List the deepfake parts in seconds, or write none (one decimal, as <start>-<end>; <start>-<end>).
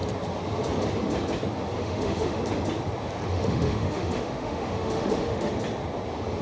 1.8-2.4; 3.3-5.5